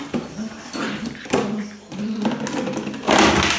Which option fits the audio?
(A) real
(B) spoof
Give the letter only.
A